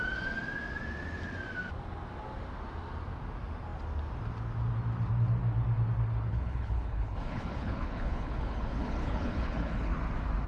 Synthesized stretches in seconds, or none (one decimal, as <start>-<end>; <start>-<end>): 6.3-9.9